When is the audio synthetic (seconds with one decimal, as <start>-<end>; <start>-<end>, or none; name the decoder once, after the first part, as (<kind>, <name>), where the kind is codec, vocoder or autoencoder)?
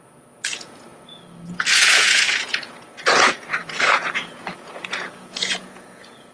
0.0-6.3 (vocoder, Vocos)